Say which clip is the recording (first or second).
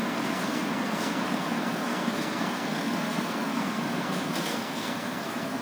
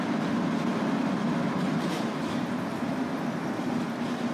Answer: second